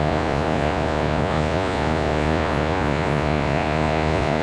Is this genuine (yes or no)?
no